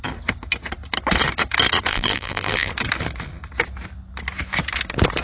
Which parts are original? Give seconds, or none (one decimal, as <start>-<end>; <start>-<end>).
0.0-1.9; 2.7-5.2